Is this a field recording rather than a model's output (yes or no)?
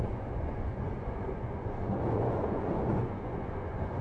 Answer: no